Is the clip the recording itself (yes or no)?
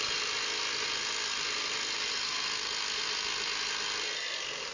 yes